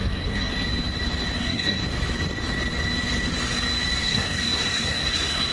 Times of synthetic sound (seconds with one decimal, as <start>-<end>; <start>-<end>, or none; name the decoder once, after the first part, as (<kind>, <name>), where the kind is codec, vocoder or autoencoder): 0.0-0.5 (codec, SNAC); 1.4-1.8; 4.0-5.5